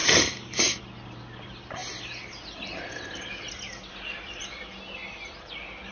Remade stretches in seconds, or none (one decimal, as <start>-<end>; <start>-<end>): 0.0-5.0; 5.5-5.9